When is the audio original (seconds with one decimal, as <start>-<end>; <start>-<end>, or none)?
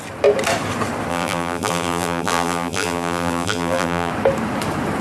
0.0-1.1; 4.1-5.0